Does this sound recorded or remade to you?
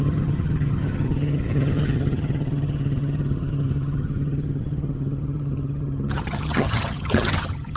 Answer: remade